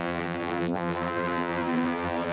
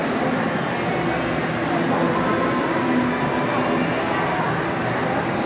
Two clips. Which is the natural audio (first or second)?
second